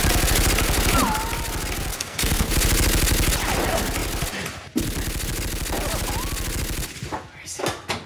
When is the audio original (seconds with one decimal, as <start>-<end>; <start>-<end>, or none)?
0.0-1.9; 2.5-8.1